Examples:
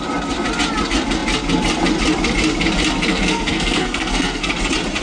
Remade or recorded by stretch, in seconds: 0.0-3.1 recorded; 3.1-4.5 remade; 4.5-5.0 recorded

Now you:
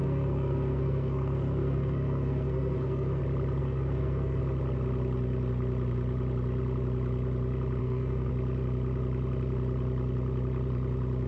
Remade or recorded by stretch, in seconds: 0.0-3.2 remade; 3.2-3.6 recorded; 3.6-4.4 remade; 4.4-7.8 recorded; 7.8-8.3 remade; 8.3-11.3 recorded

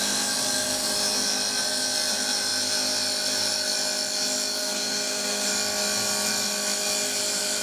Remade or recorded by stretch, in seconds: 0.0-4.6 recorded; 4.6-5.5 remade; 5.5-7.6 recorded

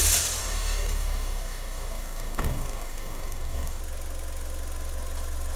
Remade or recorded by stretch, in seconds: 0.0-0.4 recorded; 0.4-3.8 remade; 3.8-5.6 recorded

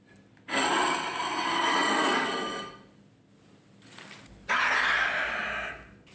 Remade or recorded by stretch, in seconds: 0.0-6.1 recorded